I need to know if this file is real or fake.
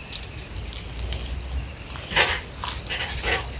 real